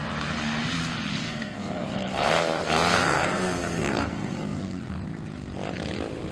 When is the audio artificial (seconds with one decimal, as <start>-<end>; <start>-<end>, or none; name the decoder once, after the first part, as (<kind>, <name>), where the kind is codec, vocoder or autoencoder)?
1.1-4.9 (codec, SNAC)